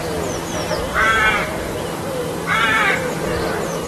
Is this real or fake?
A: real